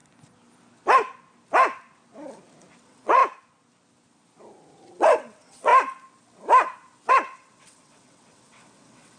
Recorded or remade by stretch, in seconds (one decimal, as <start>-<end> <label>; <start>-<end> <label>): 0.0-2.8 recorded; 2.8-3.2 remade; 3.2-5.0 recorded; 5.0-5.7 remade; 5.7-7.1 recorded; 7.1-9.2 remade